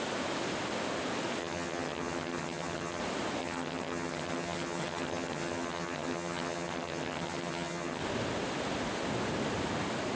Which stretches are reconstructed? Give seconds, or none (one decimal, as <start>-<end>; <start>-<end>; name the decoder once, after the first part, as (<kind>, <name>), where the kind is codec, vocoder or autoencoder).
1.4-3.0 (vocoder, HiFi-GAN); 3.4-8.0